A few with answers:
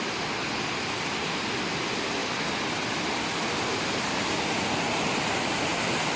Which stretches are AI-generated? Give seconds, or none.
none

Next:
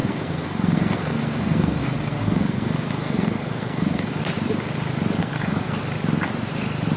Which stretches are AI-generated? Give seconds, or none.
0.0-4.2 (codec, SNAC); 5.2-5.8

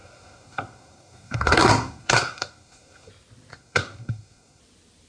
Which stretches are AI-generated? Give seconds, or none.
0.0-3.1 (codec, SNAC); 3.5-4.6

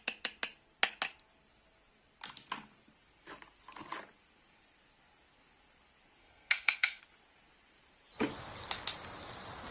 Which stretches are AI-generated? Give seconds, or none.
6.2-7.0 (codec, SNAC)

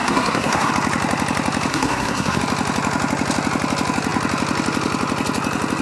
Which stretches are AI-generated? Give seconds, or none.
0.0-0.7 (codec, SNAC); 1.7-2.4

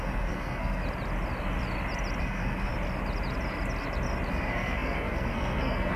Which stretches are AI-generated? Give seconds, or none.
0.0-0.8 (codec, SNAC); 2.2-2.7; 4.3-6.0

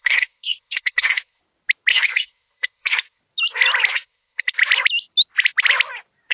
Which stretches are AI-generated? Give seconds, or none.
0.0-1.4 (codec, SNAC); 1.9-3.2; 3.9-4.6